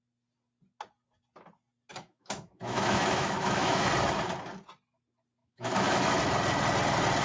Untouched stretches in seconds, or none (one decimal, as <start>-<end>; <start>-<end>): 0.0-1.9; 3.9-5.4; 6.2-7.2

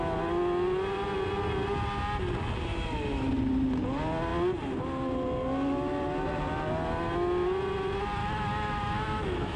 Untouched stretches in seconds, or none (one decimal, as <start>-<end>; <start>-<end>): 0.0-2.7; 3.3-8.2

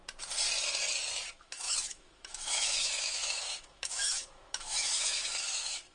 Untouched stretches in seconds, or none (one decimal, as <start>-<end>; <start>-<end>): 0.0-1.3